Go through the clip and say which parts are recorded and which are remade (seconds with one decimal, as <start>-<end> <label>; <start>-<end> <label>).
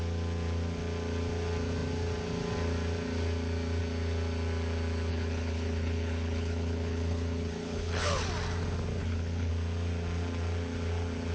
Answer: 0.0-5.1 recorded; 5.1-8.2 remade; 8.2-9.0 recorded; 9.0-9.5 remade; 9.5-11.3 recorded